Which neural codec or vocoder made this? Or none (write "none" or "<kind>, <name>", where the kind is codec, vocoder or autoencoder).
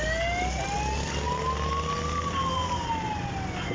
none